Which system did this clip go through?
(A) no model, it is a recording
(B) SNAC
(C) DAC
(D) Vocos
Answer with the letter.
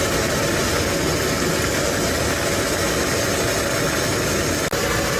A